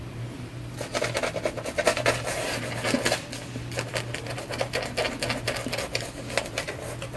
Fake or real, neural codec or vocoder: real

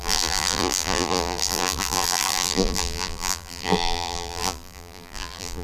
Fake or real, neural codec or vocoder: fake, vocoder, BigVGAN v2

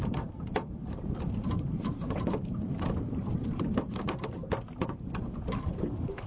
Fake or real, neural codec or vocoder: fake, vocoder, BigVGAN v2